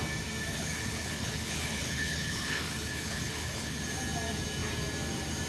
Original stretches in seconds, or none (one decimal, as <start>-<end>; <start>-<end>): 0.0-0.5; 3.8-5.5